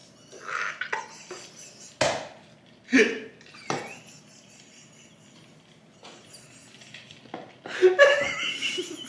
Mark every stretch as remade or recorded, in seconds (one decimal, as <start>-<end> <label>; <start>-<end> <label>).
0.0-9.1 recorded